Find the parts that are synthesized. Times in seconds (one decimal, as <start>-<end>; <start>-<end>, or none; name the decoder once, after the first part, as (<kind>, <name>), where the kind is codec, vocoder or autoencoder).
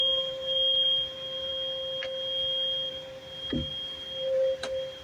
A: 0.0-1.5 (vocoder, BigVGAN v2); 2.9-5.0